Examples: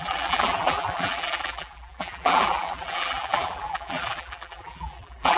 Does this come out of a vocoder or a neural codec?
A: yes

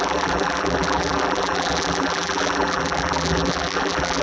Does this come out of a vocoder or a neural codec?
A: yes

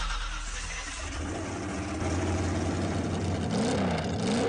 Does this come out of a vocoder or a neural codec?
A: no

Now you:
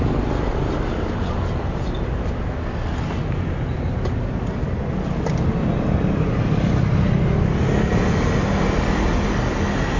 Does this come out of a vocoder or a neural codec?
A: no